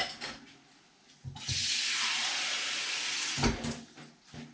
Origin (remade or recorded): recorded